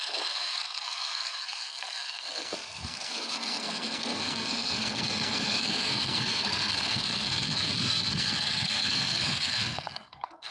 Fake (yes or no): yes